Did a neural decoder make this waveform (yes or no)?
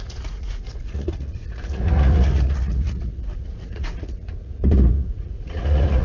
yes